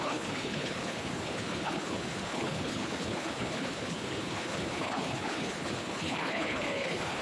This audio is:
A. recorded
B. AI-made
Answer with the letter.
B